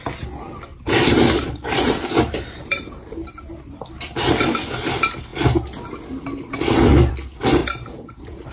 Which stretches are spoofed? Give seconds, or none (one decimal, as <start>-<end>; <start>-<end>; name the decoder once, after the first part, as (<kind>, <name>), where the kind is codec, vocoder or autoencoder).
0.7-3.7 (vocoder, BigVGAN v2); 7.6-8.5